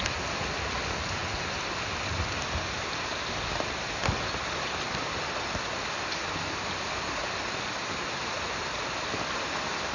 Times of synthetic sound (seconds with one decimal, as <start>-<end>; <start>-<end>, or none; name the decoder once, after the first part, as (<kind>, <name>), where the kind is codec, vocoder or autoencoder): none